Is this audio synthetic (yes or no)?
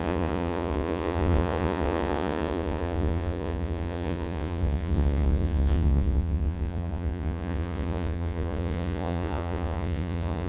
yes